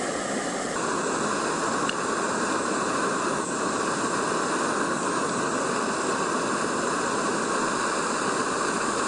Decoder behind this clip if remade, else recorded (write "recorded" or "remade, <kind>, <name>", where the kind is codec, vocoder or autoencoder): recorded